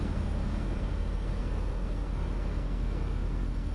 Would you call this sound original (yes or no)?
no